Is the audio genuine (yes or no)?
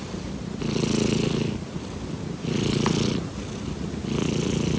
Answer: yes